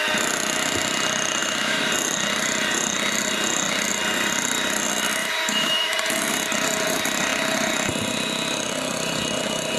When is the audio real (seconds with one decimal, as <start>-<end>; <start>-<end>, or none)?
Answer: 0.0-1.4; 1.9-5.2; 5.9-9.8